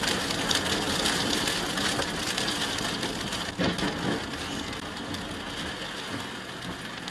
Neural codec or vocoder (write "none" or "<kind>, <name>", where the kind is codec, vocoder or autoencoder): none